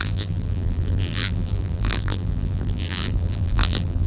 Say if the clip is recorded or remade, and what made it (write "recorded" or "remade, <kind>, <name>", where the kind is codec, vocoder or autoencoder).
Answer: remade, vocoder, BigVGAN v2